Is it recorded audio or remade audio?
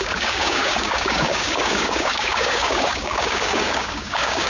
remade